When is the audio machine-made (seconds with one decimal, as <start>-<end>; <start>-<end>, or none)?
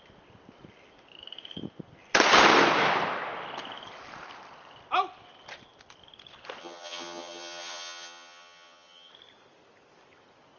6.6-9.1